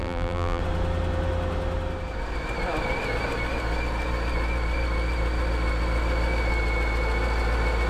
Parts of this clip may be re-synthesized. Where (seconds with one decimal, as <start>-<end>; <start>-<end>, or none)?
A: 0.0-0.6